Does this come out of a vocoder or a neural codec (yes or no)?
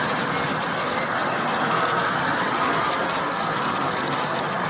no